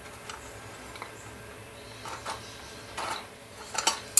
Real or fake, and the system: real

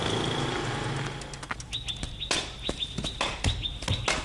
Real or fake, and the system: real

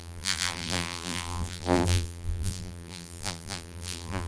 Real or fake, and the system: fake, vocoder, BigVGAN v2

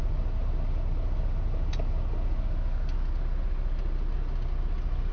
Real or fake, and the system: real